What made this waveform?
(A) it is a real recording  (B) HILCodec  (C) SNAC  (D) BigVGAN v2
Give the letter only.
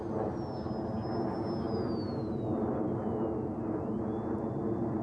A